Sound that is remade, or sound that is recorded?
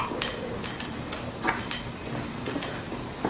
recorded